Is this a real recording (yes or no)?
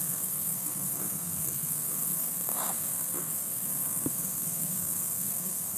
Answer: no